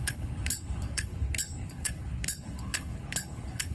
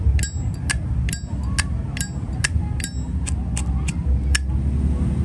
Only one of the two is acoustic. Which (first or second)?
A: second